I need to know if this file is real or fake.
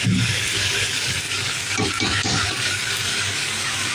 fake